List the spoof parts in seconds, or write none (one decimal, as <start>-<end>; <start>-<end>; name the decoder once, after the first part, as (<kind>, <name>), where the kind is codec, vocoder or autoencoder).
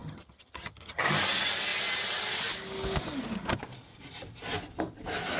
0.0-1.0 (vocoder, HiFi-GAN)